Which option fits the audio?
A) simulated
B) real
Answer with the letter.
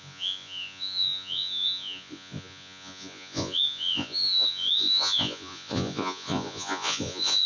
A